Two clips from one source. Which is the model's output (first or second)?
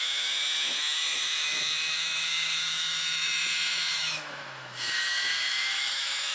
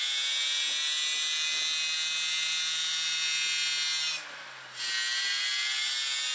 first